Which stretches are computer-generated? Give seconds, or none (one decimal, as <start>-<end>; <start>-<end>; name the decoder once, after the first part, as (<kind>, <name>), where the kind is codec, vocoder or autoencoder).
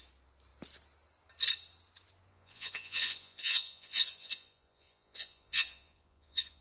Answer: 2.3-6.6 (vocoder, Vocos)